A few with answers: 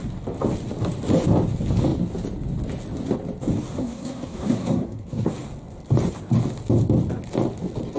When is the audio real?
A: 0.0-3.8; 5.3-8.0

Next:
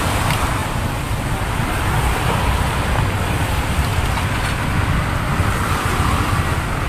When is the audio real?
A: 0.6-2.4; 3.9-4.9